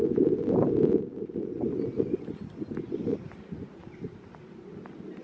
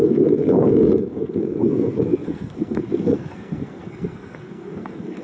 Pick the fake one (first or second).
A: second